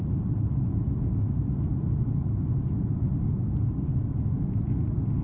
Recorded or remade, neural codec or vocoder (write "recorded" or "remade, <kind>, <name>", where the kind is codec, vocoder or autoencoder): recorded